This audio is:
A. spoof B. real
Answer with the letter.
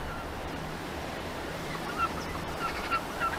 A